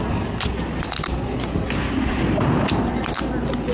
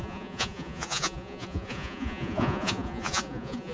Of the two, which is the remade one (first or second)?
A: second